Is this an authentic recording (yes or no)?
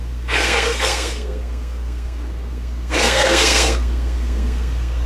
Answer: no